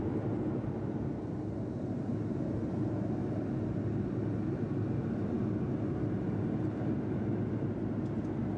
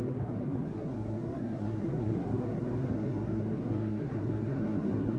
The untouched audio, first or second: first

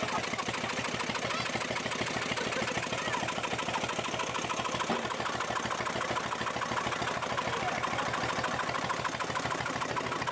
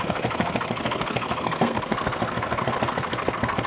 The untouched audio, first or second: first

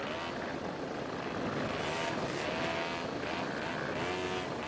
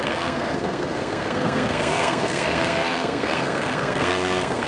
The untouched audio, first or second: first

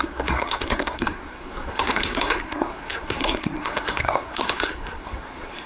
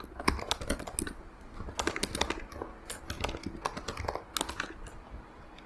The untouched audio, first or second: second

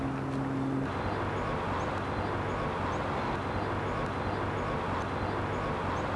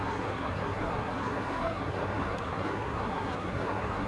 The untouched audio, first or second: first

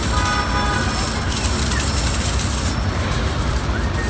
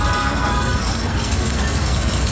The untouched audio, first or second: first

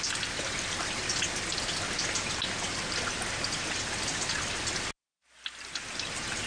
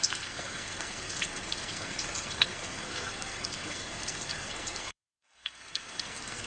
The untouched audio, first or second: first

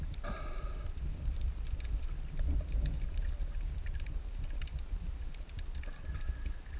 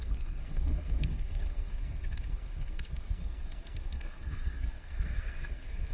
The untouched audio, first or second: first